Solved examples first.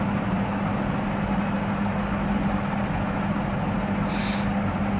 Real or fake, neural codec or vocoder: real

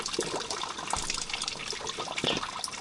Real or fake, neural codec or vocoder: real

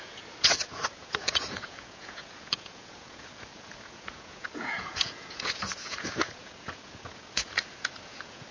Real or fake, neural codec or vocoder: fake, vocoder, Vocos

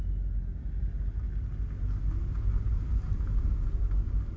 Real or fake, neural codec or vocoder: real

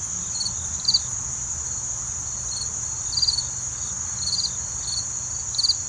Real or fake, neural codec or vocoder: real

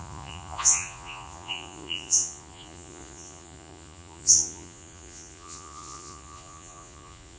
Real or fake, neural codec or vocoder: fake, vocoder, Vocos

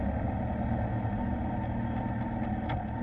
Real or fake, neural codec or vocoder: real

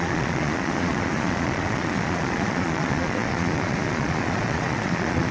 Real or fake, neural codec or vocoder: fake, vocoder, Vocos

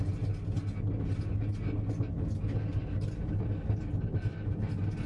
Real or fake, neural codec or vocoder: real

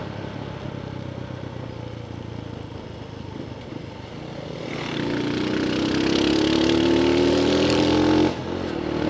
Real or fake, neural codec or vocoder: real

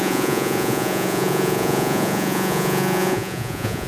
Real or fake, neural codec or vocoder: fake, vocoder, Vocos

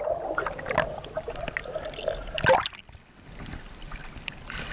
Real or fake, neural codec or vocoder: real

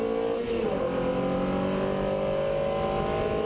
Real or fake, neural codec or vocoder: real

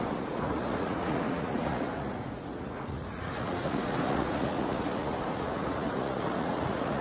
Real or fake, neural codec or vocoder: fake, vocoder, Vocos